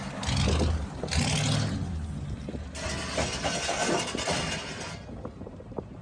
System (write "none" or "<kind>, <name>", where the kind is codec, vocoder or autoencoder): none